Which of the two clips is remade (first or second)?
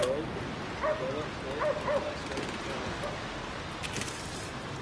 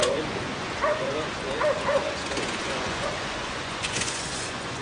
second